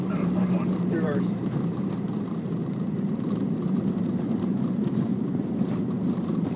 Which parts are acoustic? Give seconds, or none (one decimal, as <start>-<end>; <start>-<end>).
none

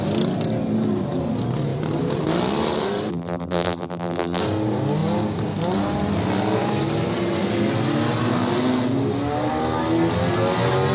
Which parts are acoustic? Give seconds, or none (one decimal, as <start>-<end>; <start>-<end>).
0.0-3.1; 4.4-10.9